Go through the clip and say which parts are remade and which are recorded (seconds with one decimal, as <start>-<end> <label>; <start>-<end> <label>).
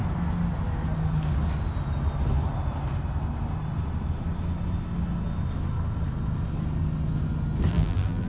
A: 0.0-7.7 recorded; 7.7-8.3 remade